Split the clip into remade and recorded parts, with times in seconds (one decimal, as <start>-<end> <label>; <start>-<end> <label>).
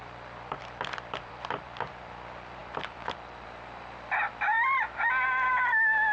0.0-6.1 remade